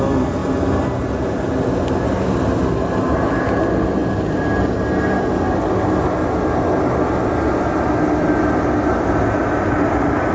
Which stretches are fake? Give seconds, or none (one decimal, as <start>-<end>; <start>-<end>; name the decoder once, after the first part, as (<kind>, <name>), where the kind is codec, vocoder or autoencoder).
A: none